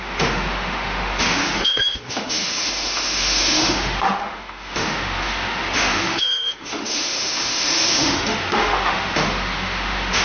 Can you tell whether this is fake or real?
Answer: fake